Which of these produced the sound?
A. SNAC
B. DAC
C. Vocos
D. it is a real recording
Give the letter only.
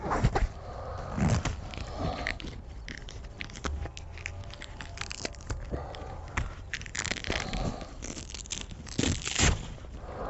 D